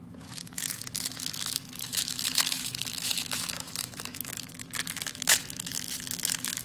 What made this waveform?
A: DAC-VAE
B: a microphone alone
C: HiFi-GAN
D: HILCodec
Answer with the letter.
A